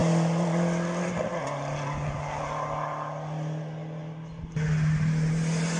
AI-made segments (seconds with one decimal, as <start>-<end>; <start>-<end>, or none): none